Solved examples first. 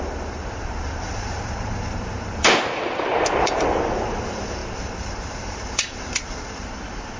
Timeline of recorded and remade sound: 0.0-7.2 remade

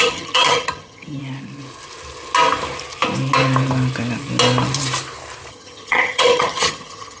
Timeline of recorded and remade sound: 0.0-1.2 remade; 1.2-5.5 recorded; 5.5-7.2 remade

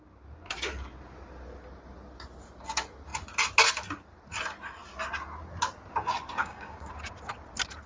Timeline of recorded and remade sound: 0.0-6.4 recorded; 6.4-6.9 remade; 6.9-7.9 recorded

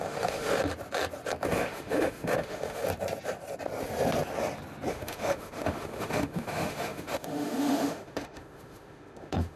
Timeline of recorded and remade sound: 0.0-0.6 remade; 0.6-1.5 recorded; 1.5-2.8 remade; 2.8-4.9 recorded; 4.9-9.6 remade

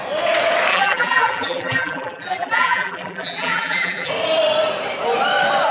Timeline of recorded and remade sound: 0.0-0.7 recorded; 0.7-4.1 remade; 4.1-5.7 recorded

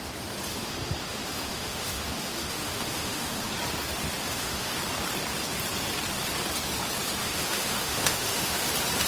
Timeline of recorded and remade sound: 0.0-0.5 recorded; 0.5-3.5 remade; 3.5-4.2 recorded; 4.2-4.8 remade; 4.8-7.2 recorded; 7.2-8.7 remade; 8.7-9.1 recorded

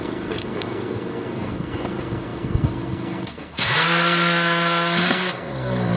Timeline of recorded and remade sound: 0.0-6.0 remade

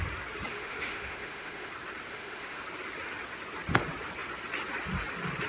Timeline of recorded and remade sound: 0.0-0.5 recorded; 0.5-1.7 remade; 1.7-2.1 recorded; 2.1-2.6 remade; 2.6-5.5 recorded